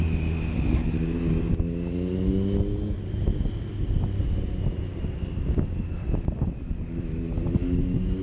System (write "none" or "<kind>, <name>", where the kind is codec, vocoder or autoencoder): none